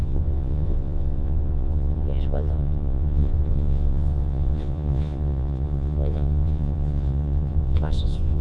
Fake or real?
fake